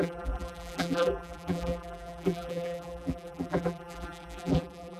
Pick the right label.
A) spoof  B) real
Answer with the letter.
A